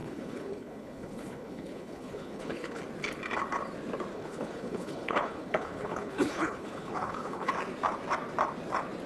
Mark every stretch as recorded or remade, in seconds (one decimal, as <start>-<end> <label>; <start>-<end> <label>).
0.0-2.8 remade; 2.8-4.1 recorded; 4.1-7.5 remade; 7.5-9.1 recorded